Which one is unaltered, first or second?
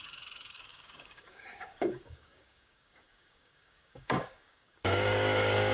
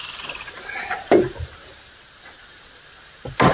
second